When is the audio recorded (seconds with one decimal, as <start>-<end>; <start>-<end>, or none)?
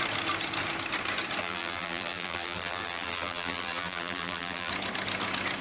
0.0-1.4; 4.7-5.6